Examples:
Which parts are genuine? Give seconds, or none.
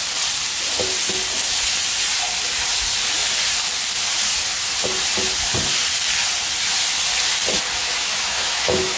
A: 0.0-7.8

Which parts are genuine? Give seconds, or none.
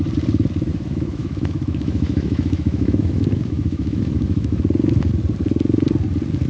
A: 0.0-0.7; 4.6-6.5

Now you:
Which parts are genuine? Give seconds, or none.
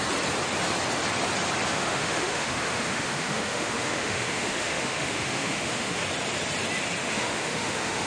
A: 0.0-1.7; 6.0-7.0